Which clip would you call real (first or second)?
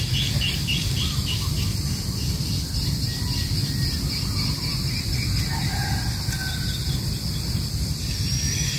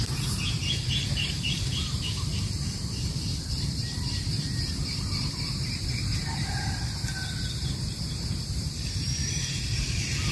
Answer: first